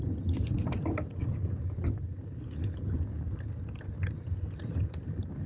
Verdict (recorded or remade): recorded